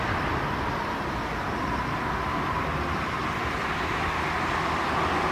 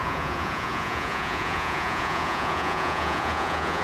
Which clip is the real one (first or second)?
first